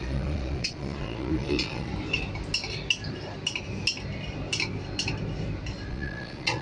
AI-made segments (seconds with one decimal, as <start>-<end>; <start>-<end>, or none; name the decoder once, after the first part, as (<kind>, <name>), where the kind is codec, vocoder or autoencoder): 0.0-1.9 (vocoder, Vocos); 5.9-6.6